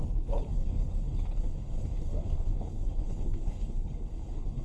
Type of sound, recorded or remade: remade